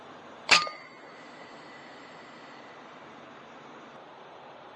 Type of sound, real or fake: fake